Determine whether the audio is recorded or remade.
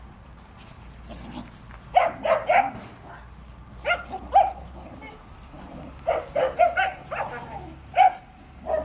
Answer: recorded